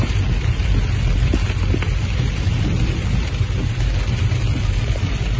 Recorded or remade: recorded